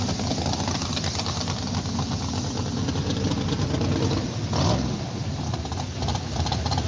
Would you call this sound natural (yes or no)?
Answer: yes